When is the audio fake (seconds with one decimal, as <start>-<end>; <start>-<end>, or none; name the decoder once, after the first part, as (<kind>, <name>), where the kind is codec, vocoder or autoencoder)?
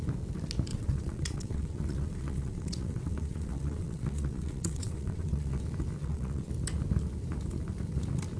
0.7-5.6 (vocoder, WaveNeXt); 6.0-6.5